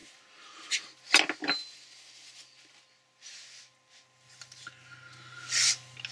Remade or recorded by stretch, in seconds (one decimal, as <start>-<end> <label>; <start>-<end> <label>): 0.0-6.1 recorded